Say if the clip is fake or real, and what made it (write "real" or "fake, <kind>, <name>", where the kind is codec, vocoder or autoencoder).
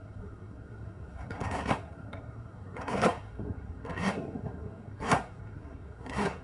fake, codec, SNAC